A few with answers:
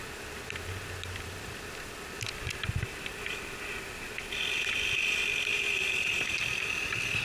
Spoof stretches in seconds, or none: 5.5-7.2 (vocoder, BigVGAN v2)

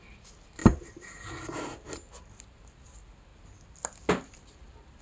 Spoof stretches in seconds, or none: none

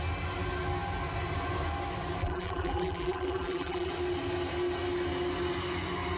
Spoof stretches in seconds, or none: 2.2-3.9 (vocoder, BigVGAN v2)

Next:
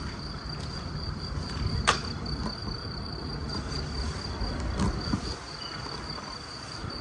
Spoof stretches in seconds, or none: 2.6-3.6 (vocoder, BigVGAN v2)